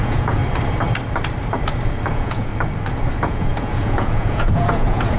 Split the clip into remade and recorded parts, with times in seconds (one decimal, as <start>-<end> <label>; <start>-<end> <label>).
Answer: 0.0-0.4 remade; 0.4-2.1 recorded; 2.1-2.5 remade; 2.5-3.2 recorded; 3.2-5.2 remade

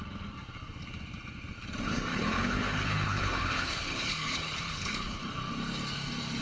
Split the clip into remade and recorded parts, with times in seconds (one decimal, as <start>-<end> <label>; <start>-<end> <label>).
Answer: 0.0-2.1 recorded; 2.1-5.2 remade; 5.2-6.4 recorded

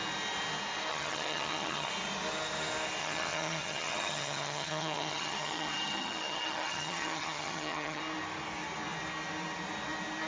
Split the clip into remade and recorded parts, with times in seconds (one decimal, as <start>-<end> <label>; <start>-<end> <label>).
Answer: 0.0-0.9 recorded; 0.9-1.9 remade; 1.9-3.0 recorded; 3.0-8.0 remade; 8.0-10.3 recorded

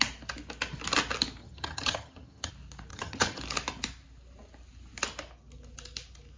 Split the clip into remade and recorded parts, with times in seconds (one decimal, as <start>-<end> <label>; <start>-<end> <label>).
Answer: 0.0-1.4 recorded; 1.4-2.5 remade; 2.5-2.9 recorded; 2.9-3.4 remade; 3.4-6.4 recorded

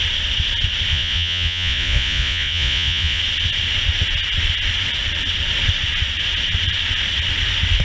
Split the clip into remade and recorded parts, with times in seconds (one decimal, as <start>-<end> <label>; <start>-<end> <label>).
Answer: 0.0-0.9 recorded; 0.9-3.2 remade; 3.2-7.8 recorded

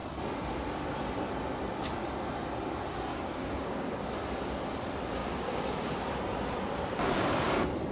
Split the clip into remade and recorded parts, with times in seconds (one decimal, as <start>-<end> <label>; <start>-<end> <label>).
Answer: 0.0-3.1 recorded; 3.1-4.1 remade; 4.1-5.2 recorded; 5.2-6.2 remade; 6.2-7.9 recorded